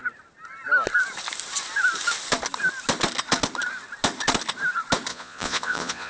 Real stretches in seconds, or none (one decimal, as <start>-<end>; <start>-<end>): 0.0-5.1